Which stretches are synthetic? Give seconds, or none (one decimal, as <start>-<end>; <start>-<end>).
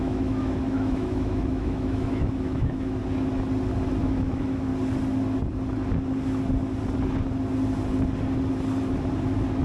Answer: 0.0-3.0; 4.0-4.7